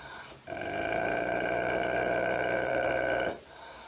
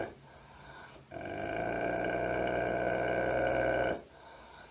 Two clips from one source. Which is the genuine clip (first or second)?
second